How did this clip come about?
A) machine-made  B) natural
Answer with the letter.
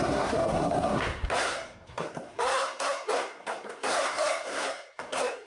A